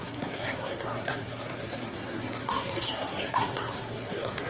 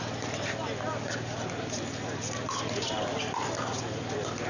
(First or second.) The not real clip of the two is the first